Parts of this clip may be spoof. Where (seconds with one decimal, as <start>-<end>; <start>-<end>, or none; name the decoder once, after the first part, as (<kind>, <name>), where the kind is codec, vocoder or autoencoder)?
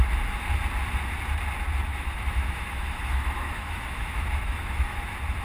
1.9-5.0 (autoencoder, DAC-VAE)